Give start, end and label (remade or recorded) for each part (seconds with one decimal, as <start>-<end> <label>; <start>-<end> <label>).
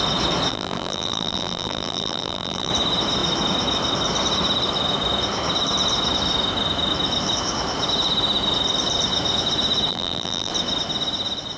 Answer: 0.0-0.5 recorded; 0.5-2.7 remade; 2.7-9.9 recorded; 9.9-10.5 remade; 10.5-11.6 recorded